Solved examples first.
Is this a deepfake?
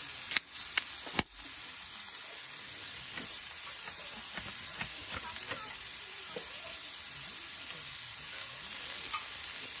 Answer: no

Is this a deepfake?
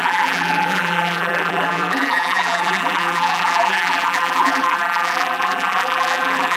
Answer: yes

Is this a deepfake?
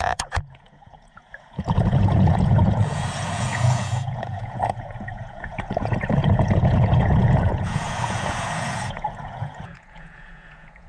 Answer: yes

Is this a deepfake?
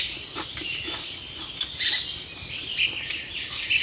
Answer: no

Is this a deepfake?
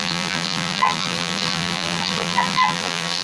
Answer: yes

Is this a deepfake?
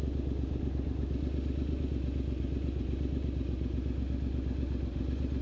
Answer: no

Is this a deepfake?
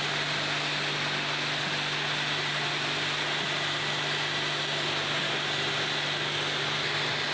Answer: no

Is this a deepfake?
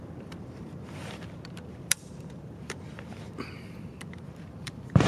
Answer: yes